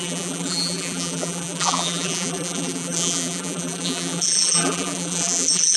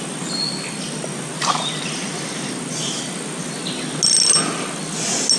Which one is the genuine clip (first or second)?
second